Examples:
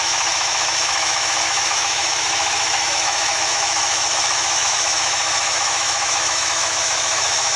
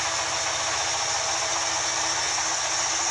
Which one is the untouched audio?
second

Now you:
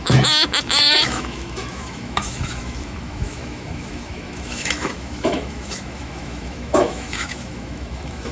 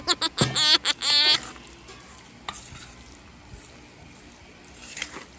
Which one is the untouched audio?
second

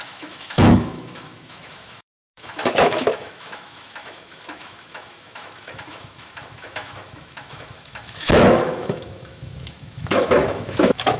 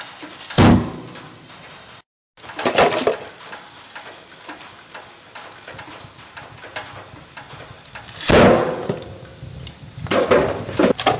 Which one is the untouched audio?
second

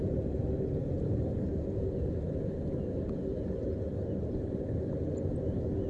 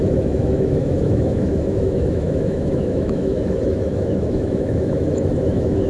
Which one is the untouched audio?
first